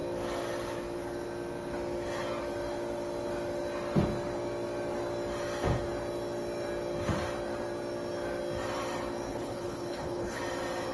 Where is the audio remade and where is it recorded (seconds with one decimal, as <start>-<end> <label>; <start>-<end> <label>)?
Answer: 0.0-9.3 recorded; 9.3-10.4 remade; 10.4-10.9 recorded